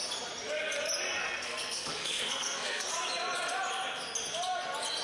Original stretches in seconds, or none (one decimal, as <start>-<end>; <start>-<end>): 0.0-1.2; 2.9-5.0